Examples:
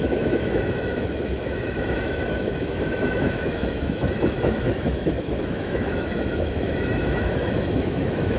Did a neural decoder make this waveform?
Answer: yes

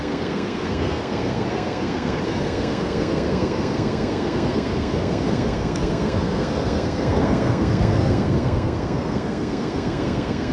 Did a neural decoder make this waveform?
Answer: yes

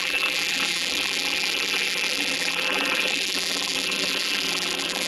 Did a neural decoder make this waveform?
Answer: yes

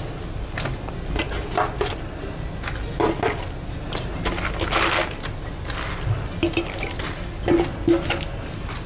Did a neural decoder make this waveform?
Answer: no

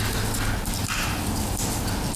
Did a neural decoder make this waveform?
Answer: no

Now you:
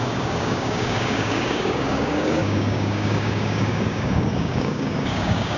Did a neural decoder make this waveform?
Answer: yes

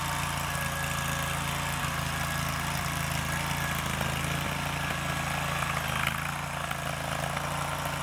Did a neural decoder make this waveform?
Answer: no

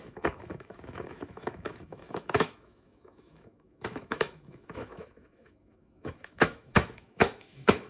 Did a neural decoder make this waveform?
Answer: yes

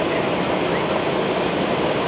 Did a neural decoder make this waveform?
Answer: no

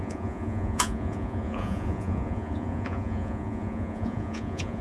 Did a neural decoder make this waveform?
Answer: yes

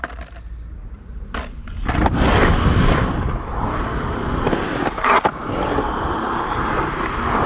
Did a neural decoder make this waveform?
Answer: no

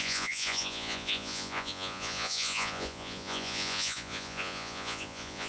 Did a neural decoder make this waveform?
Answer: yes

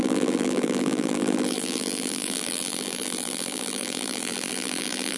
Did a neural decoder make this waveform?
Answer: yes